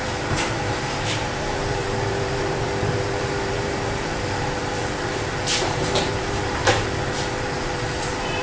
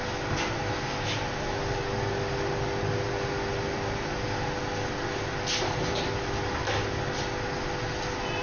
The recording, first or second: second